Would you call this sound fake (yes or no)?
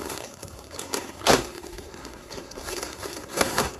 yes